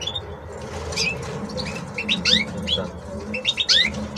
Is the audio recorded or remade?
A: recorded